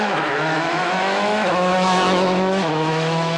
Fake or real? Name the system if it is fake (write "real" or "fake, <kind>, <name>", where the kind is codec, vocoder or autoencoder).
fake, autoencoder, DAC-VAE